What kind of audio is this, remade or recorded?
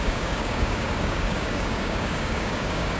remade